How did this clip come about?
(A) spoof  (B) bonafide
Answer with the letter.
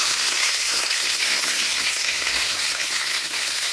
A